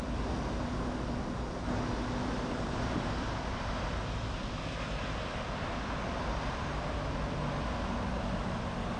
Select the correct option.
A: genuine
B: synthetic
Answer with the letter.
A